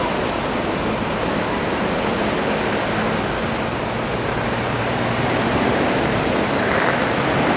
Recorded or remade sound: recorded